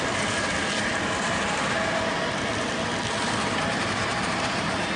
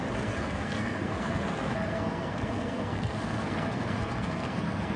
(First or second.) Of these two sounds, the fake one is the second